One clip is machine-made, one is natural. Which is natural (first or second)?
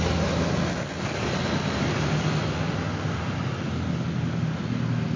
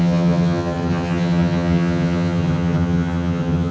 first